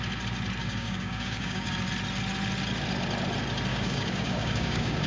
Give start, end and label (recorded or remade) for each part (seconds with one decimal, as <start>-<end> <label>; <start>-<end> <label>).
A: 0.0-0.6 recorded; 0.6-1.7 remade; 1.7-3.7 recorded; 3.7-5.1 remade